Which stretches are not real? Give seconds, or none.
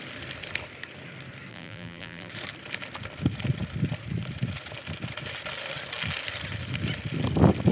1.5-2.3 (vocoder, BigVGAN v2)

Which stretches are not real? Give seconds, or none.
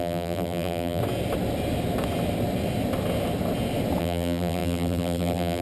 0.0-1.0 (vocoder, BigVGAN v2); 4.0-5.6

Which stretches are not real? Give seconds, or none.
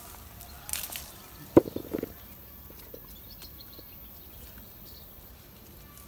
3.0-3.8 (vocoder, BigVGAN v2)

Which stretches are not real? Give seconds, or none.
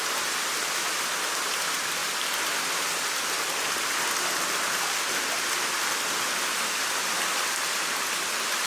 none